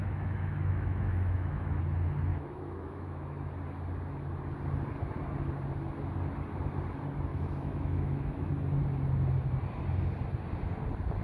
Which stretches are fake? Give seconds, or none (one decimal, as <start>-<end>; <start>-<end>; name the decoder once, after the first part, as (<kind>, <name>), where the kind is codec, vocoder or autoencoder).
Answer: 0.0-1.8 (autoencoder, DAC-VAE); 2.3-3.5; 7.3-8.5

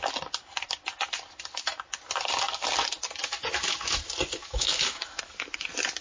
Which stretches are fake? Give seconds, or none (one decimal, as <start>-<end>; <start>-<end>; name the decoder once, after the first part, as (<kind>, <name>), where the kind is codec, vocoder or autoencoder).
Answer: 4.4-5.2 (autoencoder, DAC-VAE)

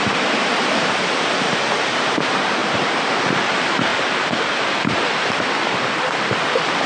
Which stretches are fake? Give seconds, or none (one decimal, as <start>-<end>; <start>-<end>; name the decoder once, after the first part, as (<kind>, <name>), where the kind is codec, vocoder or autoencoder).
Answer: 2.6-3.5 (vocoder, BigVGAN v2)

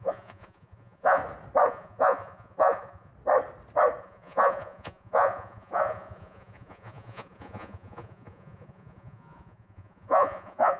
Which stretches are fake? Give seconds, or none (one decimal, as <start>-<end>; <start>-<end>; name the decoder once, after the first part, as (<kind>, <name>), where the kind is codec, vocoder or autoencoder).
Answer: 0.0-1.2 (vocoder, Vocos); 1.7-3.1; 4.0-10.8

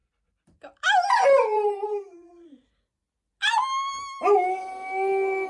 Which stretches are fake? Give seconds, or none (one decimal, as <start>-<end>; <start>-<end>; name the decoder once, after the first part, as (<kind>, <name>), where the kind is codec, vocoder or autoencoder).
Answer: 0.0-2.7 (vocoder, BigVGAN v2)